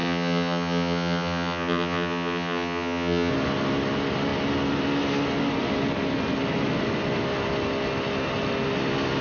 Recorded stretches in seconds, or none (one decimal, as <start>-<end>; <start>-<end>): 3.3-9.2

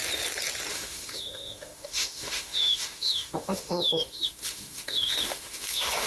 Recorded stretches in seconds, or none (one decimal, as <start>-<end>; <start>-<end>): 0.0-0.7

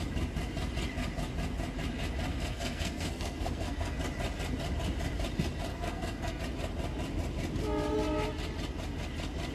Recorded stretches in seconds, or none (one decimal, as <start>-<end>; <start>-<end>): 0.0-2.3; 4.0-5.7; 6.4-9.5

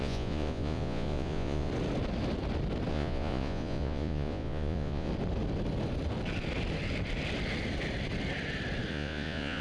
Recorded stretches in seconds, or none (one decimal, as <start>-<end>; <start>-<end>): 1.7-2.9; 5.1-8.9

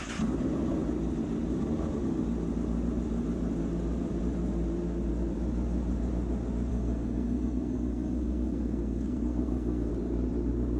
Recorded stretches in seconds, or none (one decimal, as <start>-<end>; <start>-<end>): 0.0-6.7; 9.9-10.8

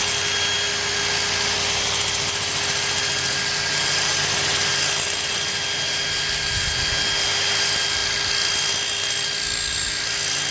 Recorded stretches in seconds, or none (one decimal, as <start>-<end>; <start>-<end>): 0.0-10.5

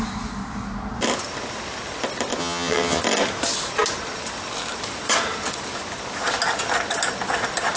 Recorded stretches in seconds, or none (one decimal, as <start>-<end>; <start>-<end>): 0.0-2.4; 3.0-7.8

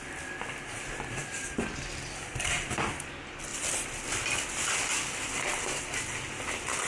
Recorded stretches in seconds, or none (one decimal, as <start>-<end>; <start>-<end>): 0.0-1.2; 3.1-3.5; 5.8-6.9